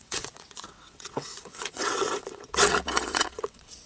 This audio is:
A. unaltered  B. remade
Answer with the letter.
B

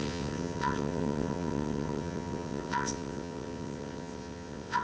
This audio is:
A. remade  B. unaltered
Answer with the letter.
A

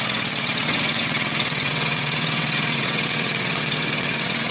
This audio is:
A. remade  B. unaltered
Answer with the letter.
A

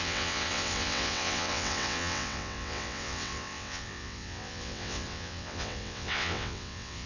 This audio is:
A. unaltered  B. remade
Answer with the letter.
B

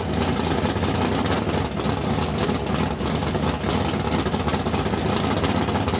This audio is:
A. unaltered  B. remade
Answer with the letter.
A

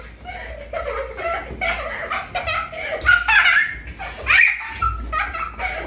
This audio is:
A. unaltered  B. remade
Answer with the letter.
A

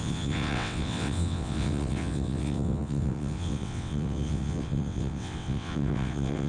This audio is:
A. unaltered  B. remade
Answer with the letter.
B